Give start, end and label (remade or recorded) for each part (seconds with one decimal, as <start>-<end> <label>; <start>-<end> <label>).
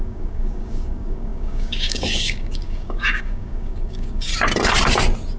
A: 0.0-4.3 remade; 4.3-5.4 recorded